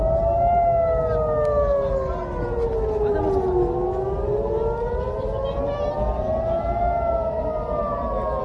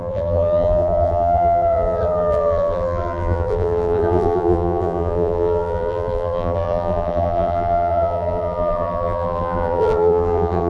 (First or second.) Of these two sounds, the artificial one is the second